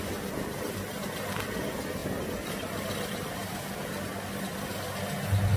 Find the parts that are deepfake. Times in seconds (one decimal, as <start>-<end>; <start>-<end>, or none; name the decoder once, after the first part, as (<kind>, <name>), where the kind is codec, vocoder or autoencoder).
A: none

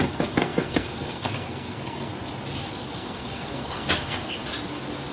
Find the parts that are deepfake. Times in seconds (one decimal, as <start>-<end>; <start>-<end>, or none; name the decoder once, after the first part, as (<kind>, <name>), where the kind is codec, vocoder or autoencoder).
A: 0.0-2.1 (codec, SNAC); 2.7-4.4